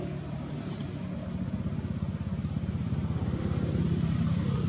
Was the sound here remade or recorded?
remade